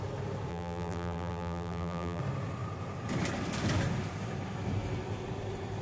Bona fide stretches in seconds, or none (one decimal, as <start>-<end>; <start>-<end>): 0.0-0.5; 2.2-5.8